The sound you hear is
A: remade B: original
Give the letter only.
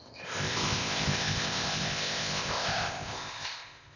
A